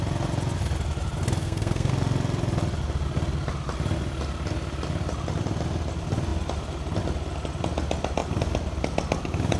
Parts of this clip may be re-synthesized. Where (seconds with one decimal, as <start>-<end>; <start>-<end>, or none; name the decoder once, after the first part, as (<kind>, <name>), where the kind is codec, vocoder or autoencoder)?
1.4-1.9 (codec, SNAC)